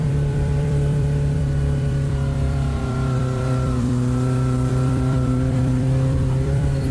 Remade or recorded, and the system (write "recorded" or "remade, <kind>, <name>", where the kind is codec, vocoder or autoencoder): remade, vocoder, BigVGAN v2